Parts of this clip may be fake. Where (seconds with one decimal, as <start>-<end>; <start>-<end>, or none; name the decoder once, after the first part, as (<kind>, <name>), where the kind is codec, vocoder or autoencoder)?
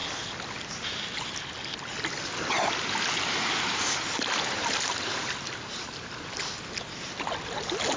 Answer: none